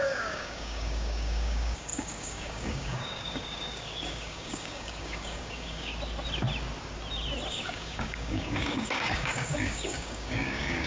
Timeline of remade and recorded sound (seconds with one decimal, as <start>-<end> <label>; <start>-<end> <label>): 0.0-5.9 remade; 5.9-7.5 recorded; 7.5-10.9 remade